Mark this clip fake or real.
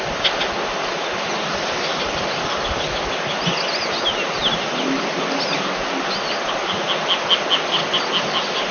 real